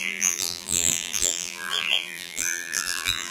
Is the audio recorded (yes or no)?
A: no